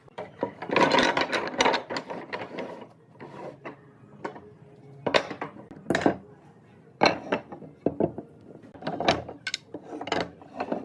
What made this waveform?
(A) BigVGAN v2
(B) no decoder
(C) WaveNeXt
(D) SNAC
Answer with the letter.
B